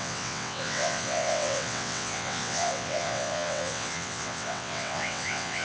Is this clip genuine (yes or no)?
no